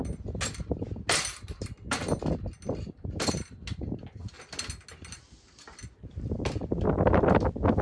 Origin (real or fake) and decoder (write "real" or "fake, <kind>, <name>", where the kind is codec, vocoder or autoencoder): real